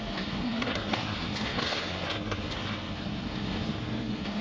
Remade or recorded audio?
remade